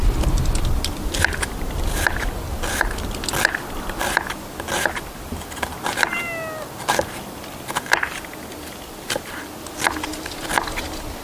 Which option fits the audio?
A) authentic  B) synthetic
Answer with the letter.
A